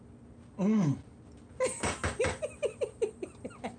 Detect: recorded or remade recorded